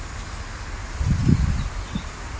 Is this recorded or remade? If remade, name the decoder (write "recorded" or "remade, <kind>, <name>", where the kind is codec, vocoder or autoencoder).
recorded